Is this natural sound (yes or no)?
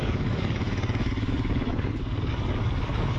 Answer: no